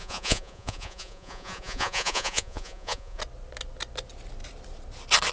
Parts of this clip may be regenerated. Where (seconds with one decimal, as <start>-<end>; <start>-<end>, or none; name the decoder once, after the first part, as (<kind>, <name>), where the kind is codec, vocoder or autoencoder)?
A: 0.0-3.2 (vocoder, Vocos)